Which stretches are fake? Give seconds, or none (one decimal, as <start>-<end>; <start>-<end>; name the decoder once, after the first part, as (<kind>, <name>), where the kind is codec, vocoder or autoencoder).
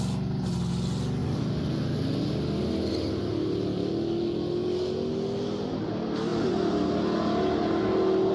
none